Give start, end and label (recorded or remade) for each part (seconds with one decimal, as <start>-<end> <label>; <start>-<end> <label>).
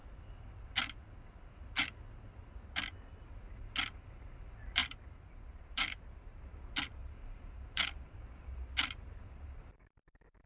0.0-0.7 remade; 0.7-4.8 recorded; 4.8-6.4 remade; 6.4-7.0 recorded; 7.0-9.2 remade; 9.2-10.5 recorded